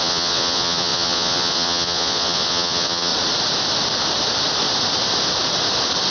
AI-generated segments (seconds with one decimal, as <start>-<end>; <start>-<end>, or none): 0.0-3.1